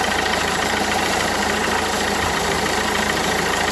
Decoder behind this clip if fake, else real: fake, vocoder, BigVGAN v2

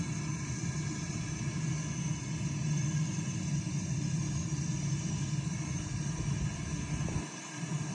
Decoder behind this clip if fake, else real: real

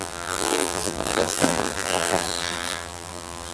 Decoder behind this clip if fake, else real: fake, vocoder, BigVGAN v2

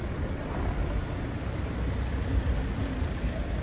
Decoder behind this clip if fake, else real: fake, vocoder, BigVGAN v2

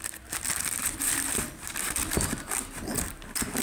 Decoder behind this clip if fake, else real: real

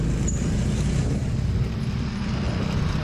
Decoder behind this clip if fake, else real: fake, vocoder, BigVGAN v2